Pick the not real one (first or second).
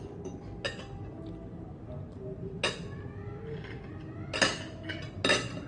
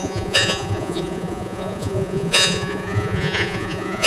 second